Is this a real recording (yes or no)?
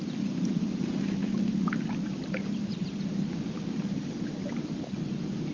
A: yes